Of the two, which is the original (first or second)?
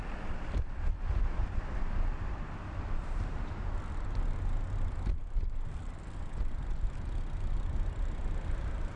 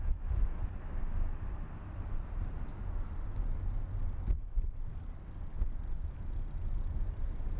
second